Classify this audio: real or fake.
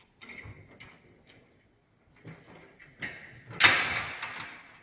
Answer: real